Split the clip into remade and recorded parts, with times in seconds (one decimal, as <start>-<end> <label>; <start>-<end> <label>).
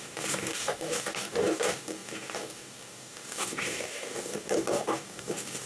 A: 0.0-5.7 remade